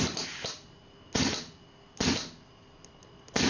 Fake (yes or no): no